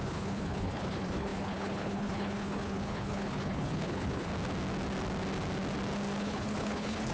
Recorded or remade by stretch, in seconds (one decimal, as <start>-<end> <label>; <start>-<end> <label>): 0.0-4.3 remade; 4.3-6.2 recorded; 6.2-7.1 remade